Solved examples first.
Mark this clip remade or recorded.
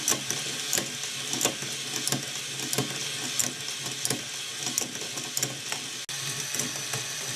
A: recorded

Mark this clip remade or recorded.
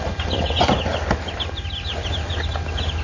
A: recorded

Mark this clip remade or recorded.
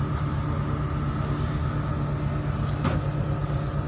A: recorded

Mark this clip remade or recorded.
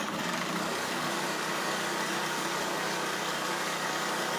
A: remade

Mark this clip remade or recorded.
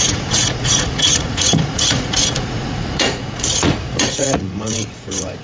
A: remade